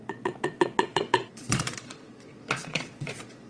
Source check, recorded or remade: remade